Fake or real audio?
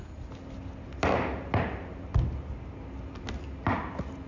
real